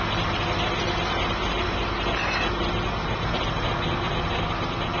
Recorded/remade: recorded